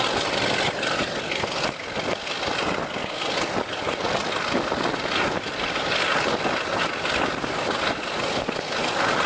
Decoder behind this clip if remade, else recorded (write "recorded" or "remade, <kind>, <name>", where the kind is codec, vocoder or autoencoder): recorded